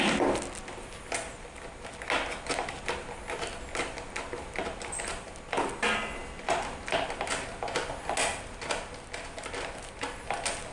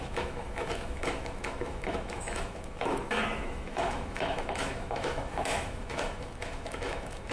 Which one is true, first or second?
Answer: first